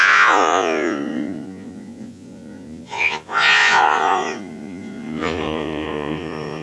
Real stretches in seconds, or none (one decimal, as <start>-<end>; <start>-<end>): none